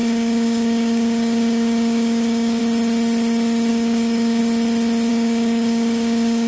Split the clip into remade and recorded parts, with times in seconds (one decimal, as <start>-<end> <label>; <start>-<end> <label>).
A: 0.0-2.6 remade; 2.6-3.7 recorded; 3.7-4.4 remade; 4.4-5.1 recorded; 5.1-6.5 remade